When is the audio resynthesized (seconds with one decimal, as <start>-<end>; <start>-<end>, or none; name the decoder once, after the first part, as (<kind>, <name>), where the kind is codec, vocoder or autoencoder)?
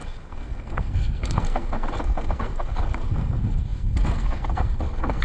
0.0-5.2 (codec, SNAC)